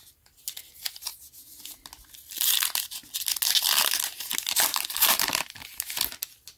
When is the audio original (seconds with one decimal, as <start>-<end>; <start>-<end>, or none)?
0.0-4.7; 5.9-6.6